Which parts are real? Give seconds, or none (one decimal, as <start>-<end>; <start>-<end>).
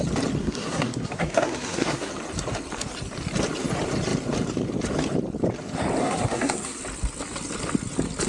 0.0-0.4; 2.1-6.0; 6.8-8.3